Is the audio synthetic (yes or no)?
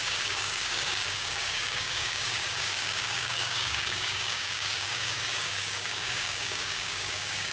yes